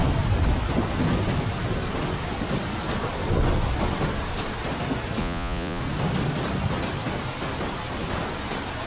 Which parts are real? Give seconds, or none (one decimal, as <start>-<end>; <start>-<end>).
0.0-5.2; 5.8-8.9